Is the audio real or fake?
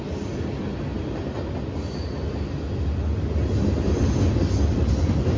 real